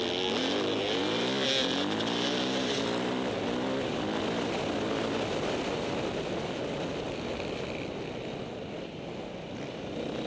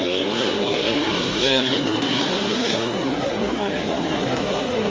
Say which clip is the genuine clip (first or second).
first